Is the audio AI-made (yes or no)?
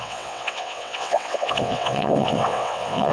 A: yes